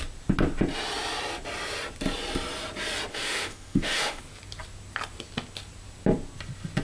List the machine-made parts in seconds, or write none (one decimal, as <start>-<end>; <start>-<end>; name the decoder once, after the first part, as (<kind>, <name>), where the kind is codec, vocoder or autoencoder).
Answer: 3.1-4.2 (autoencoder, DAC-VAE)